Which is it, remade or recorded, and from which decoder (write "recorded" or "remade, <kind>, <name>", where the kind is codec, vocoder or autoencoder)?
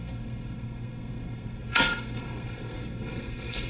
remade, codec, SNAC